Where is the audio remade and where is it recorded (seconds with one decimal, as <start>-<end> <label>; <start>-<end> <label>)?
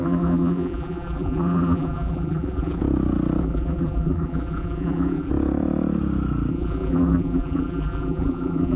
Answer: 0.0-2.8 remade; 2.8-3.4 recorded; 3.4-5.3 remade; 5.3-6.5 recorded; 6.5-8.8 remade